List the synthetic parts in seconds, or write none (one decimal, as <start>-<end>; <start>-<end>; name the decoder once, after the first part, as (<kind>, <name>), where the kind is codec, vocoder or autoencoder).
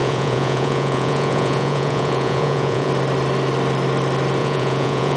0.0-2.9 (vocoder, Vocos); 4.4-5.2